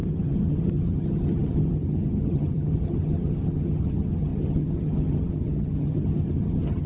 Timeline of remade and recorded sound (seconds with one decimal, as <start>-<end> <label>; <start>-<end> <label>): 0.0-6.9 remade